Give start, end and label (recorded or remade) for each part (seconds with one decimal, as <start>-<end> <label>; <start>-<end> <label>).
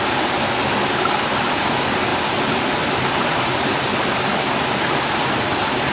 0.0-5.9 recorded